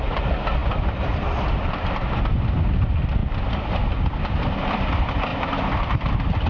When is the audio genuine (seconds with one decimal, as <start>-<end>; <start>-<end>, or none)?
0.0-0.6; 2.2-6.5